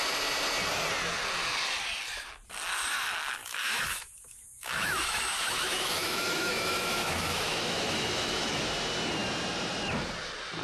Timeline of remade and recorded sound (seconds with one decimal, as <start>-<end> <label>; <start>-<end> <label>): 0.0-3.4 recorded; 3.4-8.6 remade; 8.6-10.6 recorded